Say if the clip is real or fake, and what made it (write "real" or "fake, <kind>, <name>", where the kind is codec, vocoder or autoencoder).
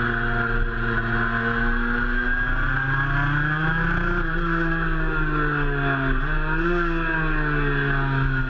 real